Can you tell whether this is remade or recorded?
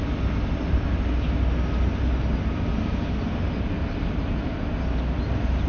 recorded